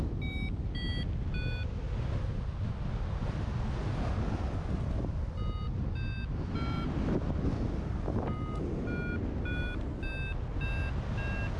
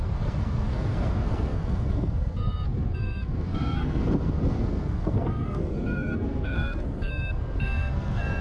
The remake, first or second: second